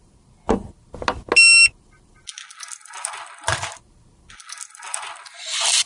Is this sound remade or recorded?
recorded